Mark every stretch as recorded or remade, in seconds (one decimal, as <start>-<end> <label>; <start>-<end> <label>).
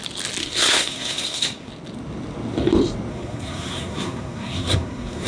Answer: 0.0-0.4 recorded; 0.4-1.7 remade; 1.7-3.1 recorded; 3.1-5.3 remade